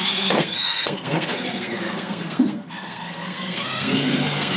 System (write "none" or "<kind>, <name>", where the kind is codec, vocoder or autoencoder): codec, SNAC